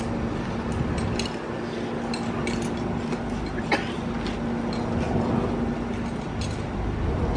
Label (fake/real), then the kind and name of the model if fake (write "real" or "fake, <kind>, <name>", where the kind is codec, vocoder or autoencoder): real